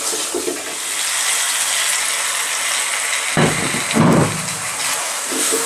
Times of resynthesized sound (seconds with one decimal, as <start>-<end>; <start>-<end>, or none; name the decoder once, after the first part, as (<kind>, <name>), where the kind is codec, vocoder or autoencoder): 5.0-5.7 (codec, DAC)